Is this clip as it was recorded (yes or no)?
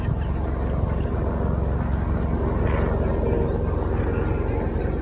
yes